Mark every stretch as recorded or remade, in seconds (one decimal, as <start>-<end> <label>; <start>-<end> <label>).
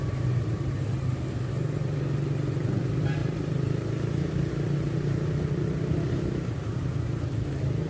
0.0-0.6 remade; 0.6-3.2 recorded; 3.2-5.3 remade; 5.3-7.9 recorded